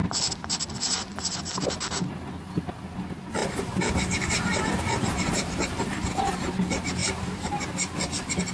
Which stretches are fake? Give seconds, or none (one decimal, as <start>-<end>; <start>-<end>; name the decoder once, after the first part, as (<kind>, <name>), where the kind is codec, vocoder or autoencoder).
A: 3.4-5.7 (vocoder, BigVGAN v2); 7.0-7.6